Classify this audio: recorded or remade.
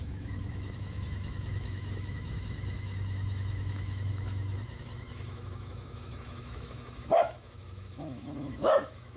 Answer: remade